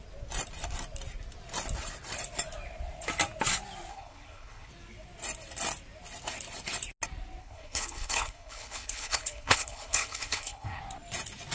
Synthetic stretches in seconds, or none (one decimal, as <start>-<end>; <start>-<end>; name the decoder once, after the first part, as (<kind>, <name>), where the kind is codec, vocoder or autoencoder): 3.9-4.7 (codec, HILCodec); 7.4-10.8